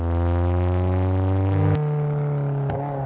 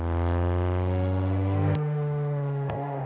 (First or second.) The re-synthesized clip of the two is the second